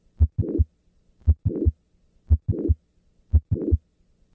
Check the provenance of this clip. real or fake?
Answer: real